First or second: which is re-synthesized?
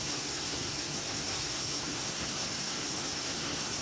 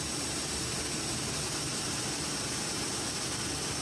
first